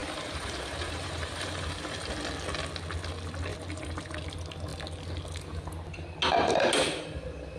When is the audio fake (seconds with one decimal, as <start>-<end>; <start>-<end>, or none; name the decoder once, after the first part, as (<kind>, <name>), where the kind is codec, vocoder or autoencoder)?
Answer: 0.0-2.1 (vocoder, BigVGAN v2); 3.5-4.2